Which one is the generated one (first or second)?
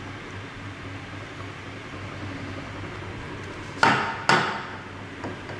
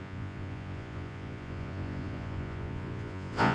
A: second